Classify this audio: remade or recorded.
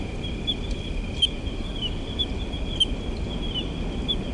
recorded